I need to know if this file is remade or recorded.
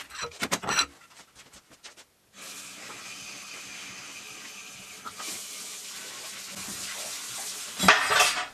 recorded